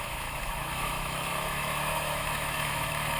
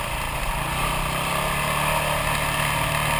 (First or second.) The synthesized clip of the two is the first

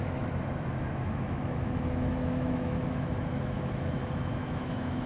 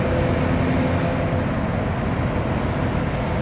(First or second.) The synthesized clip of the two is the first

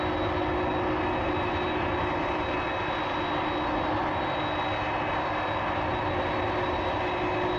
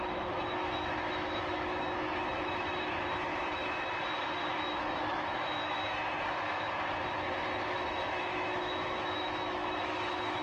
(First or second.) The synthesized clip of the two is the second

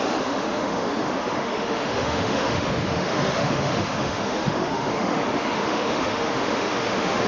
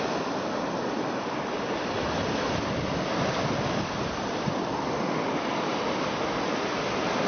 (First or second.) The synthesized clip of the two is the first